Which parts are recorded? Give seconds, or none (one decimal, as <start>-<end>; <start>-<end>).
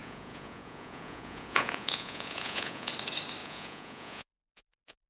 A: 2.9-3.4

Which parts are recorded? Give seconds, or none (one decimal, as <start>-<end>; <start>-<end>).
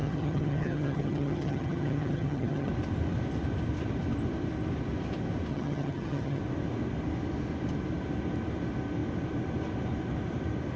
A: 2.7-5.5; 6.4-10.8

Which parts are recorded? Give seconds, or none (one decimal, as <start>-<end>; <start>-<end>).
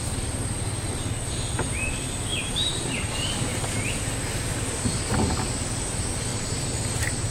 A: 0.0-2.3; 3.1-6.3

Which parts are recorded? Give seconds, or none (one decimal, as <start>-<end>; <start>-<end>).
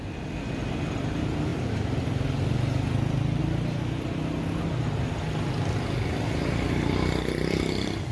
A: 0.0-8.1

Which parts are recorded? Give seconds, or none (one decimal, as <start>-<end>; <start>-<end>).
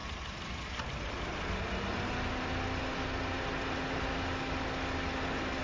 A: 0.0-5.6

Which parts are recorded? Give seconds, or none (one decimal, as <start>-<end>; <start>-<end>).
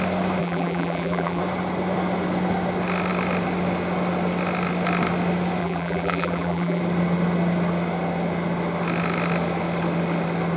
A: 0.0-0.4; 1.4-5.6; 6.8-10.6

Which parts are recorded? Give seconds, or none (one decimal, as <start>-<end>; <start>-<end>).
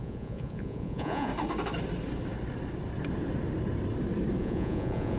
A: 1.3-4.4